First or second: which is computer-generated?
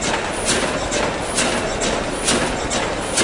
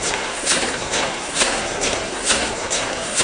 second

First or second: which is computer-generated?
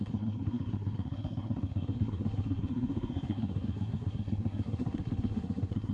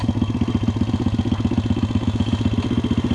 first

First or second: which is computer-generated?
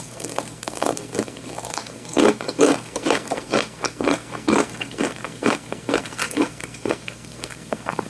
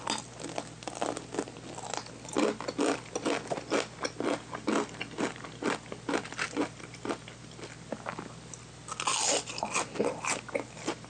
first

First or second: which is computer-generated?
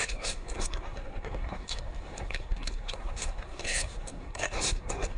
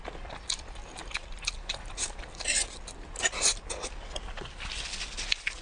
first